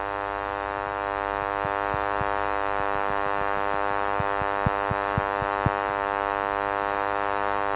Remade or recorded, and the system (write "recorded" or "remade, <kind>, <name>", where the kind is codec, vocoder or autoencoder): recorded